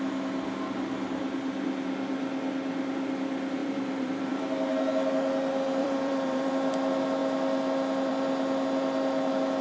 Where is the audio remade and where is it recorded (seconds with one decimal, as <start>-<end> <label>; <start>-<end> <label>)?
0.0-3.6 recorded; 3.6-4.4 remade; 4.4-5.8 recorded; 5.8-6.5 remade; 6.5-9.6 recorded